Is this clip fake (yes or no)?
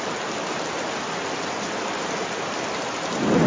no